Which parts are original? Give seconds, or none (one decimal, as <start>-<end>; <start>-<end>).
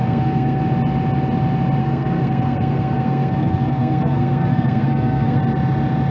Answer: 0.6-1.8; 5.4-6.1